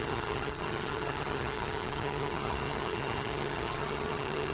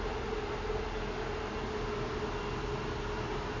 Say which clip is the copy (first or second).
first